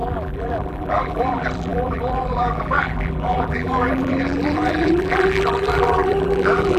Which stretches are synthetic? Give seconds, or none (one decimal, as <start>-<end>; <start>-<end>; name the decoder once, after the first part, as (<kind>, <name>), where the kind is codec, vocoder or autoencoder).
0.0-6.8 (vocoder, BigVGAN v2)